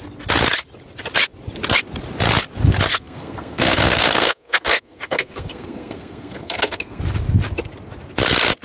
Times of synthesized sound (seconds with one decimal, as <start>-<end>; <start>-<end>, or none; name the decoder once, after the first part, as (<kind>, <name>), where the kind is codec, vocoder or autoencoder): 2.9-7.0 (codec, SNAC)